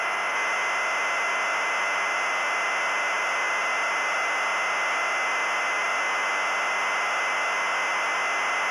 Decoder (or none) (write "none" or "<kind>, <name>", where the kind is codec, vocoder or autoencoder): none